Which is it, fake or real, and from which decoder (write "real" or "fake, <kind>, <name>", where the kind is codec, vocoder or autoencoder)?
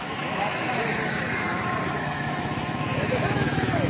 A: fake, autoencoder, DAC-VAE